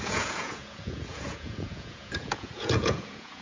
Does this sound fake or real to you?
fake